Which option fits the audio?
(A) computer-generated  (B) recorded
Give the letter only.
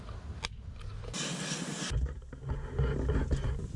B